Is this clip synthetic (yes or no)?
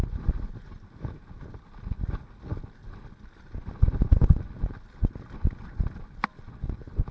no